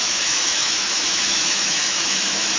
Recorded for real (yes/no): no